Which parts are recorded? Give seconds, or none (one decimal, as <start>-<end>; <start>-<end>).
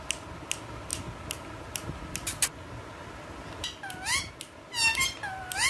0.0-5.7